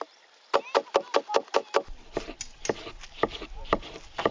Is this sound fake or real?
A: real